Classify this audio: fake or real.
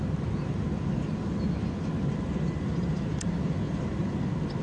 real